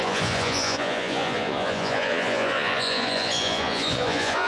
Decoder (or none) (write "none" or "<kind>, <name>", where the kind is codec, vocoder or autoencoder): vocoder, Vocos